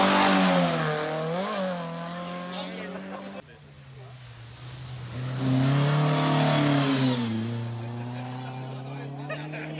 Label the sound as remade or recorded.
recorded